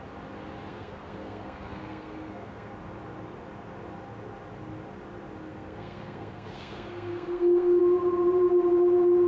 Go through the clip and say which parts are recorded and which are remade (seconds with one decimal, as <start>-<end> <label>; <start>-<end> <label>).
0.0-0.7 recorded; 0.7-2.7 remade; 2.7-5.5 recorded; 5.5-7.8 remade; 7.8-9.3 recorded